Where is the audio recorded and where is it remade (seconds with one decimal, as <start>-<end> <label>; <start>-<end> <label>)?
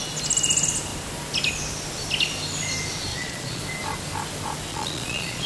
0.0-3.1 recorded; 3.1-3.6 remade; 3.6-4.7 recorded; 4.7-5.5 remade